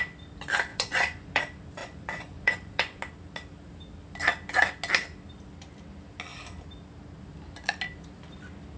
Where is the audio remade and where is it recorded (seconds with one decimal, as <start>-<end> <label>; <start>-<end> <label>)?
0.0-0.7 recorded; 0.7-1.4 remade; 1.4-1.8 recorded; 1.8-3.0 remade; 3.0-8.8 recorded